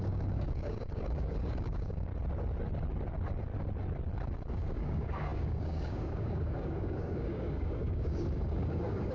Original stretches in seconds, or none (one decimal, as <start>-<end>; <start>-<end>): 2.1-4.5